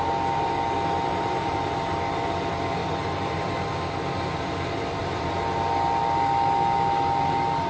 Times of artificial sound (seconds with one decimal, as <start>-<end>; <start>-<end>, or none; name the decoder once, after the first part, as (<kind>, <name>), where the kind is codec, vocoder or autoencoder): 1.1-1.9 (vocoder, BigVGAN v2); 2.8-3.5; 5.0-5.6